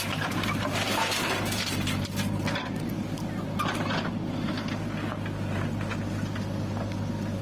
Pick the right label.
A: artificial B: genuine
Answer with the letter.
B